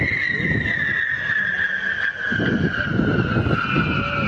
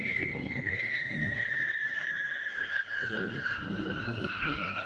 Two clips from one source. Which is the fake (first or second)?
second